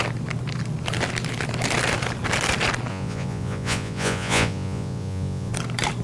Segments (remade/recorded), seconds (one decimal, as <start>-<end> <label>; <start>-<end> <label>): 0.0-2.9 recorded; 2.9-5.5 remade; 5.5-6.0 recorded